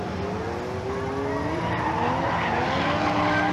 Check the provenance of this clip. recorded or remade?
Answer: recorded